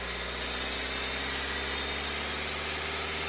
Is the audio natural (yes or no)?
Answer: yes